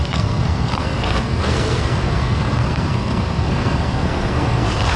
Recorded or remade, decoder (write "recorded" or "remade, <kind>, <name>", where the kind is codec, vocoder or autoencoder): remade, codec, SNAC